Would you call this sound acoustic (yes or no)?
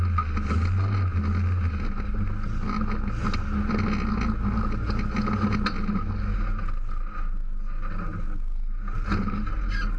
yes